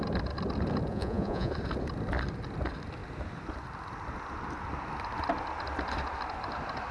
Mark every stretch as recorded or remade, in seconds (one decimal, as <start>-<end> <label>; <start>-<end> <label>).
0.0-0.9 recorded; 0.9-1.5 remade; 1.5-6.9 recorded